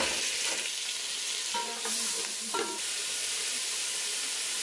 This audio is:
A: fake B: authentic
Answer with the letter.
B